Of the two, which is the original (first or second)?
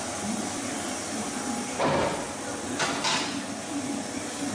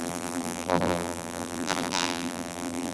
first